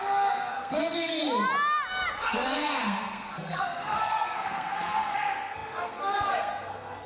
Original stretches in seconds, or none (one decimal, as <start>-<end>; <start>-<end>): 1.2-2.2